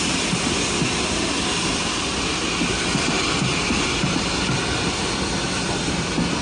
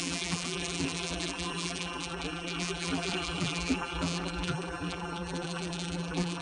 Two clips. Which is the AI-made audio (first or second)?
second